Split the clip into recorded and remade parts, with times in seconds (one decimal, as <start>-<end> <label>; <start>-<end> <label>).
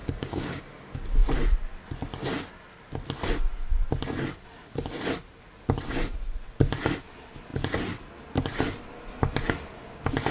0.0-0.6 remade; 0.6-10.3 recorded